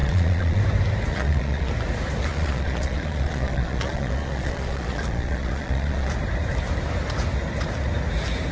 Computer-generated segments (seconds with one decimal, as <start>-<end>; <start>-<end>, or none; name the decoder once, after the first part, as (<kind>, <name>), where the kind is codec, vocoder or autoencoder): 0.0-0.6 (vocoder, Vocos); 1.1-1.7; 2.3-6.1